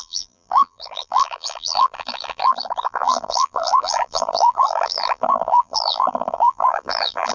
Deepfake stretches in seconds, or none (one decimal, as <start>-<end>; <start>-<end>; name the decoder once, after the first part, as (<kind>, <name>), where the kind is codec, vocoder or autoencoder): 0.0-7.3 (vocoder, BigVGAN v2)